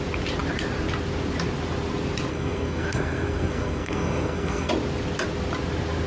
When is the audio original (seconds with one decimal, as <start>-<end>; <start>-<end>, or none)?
0.0-2.3; 4.7-6.1